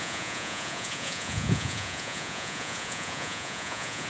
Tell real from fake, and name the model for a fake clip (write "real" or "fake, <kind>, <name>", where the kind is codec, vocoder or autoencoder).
fake, vocoder, Vocos